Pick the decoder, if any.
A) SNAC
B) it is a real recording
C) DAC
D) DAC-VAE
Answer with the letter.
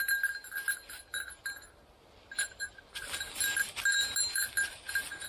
B